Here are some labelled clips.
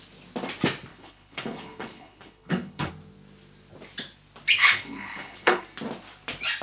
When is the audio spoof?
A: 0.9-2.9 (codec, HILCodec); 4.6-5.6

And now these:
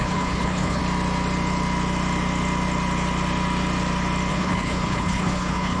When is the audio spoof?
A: 0.0-0.8 (codec, HILCodec); 4.3-5.8